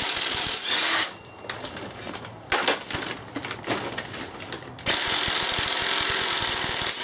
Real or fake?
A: real